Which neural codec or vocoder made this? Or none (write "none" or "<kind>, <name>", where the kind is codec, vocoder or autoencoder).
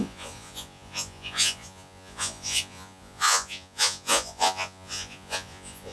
vocoder, Vocos